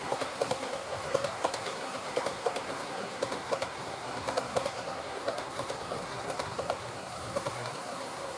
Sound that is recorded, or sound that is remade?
remade